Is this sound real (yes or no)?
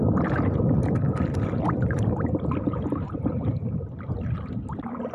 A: yes